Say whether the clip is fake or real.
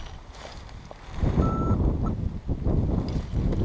real